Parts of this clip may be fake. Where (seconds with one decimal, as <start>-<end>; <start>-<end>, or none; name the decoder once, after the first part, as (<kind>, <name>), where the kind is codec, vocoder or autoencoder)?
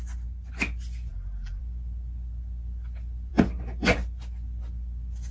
1.1-1.6 (vocoder, BigVGAN v2)